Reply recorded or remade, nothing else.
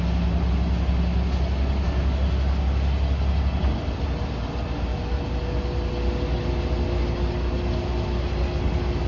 recorded